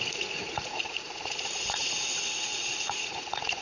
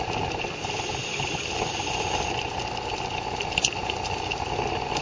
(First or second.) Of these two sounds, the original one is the second